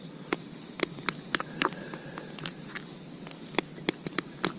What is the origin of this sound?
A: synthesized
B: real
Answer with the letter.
B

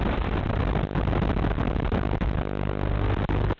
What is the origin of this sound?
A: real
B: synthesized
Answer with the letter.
A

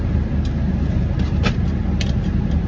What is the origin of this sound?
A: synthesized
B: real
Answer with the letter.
B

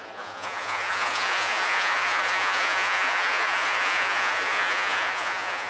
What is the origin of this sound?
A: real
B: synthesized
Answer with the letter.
B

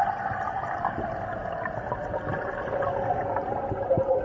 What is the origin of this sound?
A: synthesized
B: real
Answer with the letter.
B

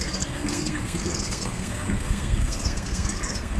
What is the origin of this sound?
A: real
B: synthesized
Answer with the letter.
B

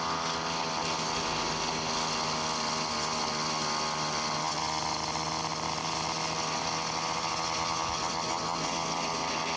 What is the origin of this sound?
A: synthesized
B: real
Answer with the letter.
B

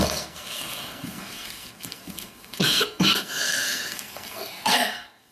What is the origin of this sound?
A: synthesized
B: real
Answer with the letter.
A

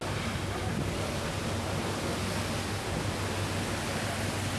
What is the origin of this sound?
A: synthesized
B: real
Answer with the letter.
B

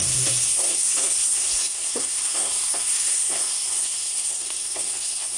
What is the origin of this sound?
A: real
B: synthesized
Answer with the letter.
B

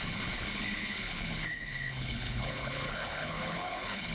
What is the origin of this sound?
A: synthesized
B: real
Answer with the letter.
A